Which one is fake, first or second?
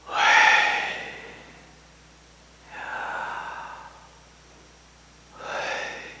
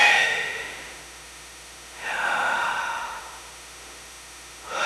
second